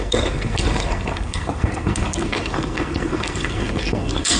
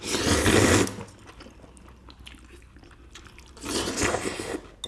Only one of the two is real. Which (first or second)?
second